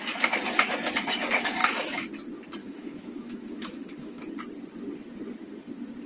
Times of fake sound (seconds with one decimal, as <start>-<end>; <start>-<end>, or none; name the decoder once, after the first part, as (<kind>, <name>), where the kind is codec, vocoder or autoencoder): 1.6-2.1 (autoencoder, DAC-VAE); 2.6-4.2